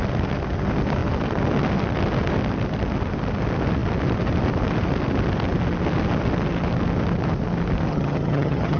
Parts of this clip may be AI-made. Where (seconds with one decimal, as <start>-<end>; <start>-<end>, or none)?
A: 7.9-8.8